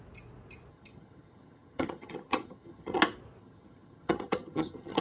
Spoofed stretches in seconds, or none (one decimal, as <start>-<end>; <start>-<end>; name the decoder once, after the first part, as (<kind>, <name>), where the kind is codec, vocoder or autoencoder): 0.7-3.0 (vocoder, HiFi-GAN); 3.4-5.0